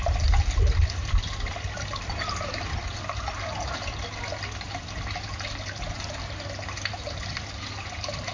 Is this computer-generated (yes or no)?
no